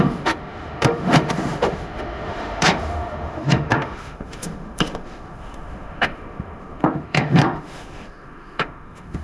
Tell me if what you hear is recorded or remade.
remade